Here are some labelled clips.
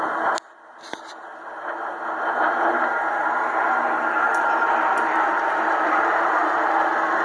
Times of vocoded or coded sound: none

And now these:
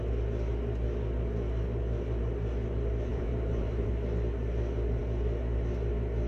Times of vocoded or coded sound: 3.1-3.9 (vocoder, BigVGAN v2)

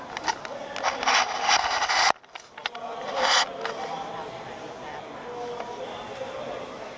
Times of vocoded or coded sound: none